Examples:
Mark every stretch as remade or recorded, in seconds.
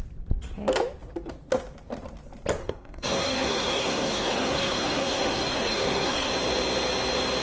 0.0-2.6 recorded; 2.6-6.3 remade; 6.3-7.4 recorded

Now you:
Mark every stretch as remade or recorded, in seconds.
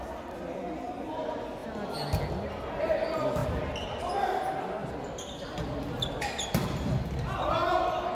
0.0-8.1 recorded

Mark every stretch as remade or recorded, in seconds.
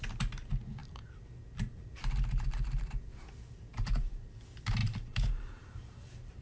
0.0-0.8 recorded; 0.8-3.1 remade; 3.1-3.7 recorded; 3.7-4.2 remade; 4.2-4.8 recorded; 4.8-6.4 remade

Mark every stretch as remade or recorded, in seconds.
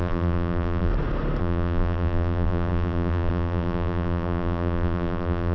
0.0-0.9 remade; 0.9-1.4 recorded; 1.4-5.5 remade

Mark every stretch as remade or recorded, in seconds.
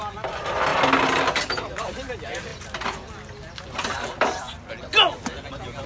0.0-5.9 recorded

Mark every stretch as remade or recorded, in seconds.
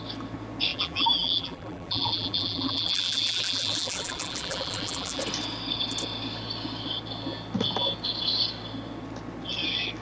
0.0-0.7 recorded; 0.7-5.2 remade; 5.2-10.0 recorded